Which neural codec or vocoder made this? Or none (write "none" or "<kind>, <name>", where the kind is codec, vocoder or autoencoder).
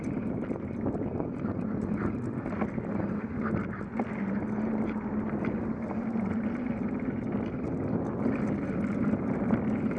none